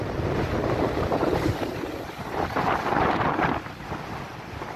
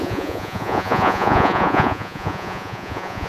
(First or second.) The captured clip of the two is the first